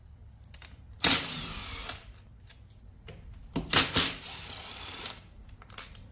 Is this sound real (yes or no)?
yes